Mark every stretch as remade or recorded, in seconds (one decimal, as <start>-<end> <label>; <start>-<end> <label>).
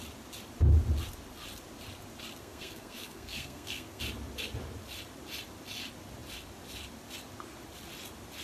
0.0-2.4 recorded; 2.4-4.0 remade; 4.0-8.4 recorded